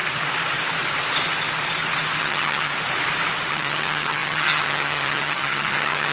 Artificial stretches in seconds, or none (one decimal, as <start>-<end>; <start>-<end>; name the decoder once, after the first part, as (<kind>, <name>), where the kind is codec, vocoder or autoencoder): 2.2-2.7 (vocoder, HiFi-GAN); 3.5-6.1